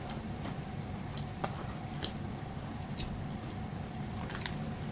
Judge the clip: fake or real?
real